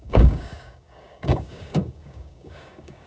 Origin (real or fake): fake